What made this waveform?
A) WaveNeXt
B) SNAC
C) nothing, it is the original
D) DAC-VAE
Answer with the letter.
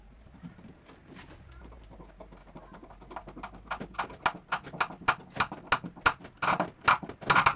C